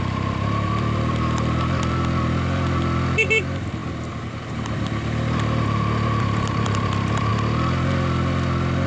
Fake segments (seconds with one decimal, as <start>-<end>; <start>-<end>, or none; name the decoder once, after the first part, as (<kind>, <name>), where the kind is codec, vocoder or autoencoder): 0.0-3.8 (vocoder, BigVGAN v2); 6.2-7.3